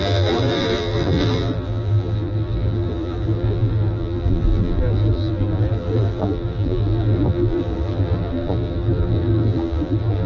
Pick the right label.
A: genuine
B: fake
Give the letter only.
B